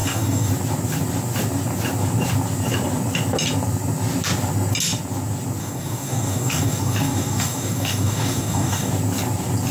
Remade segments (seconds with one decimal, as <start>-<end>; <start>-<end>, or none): 0.0-0.5; 5.6-8.9